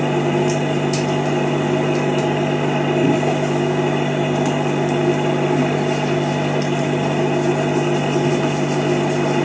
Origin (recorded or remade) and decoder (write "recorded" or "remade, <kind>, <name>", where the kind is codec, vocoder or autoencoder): recorded